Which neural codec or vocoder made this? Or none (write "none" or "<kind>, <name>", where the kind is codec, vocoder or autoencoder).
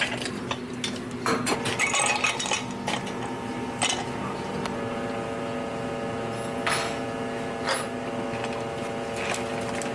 none